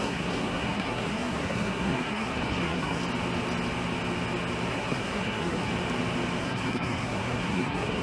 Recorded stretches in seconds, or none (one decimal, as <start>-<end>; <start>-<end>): 3.0-4.7; 5.7-6.4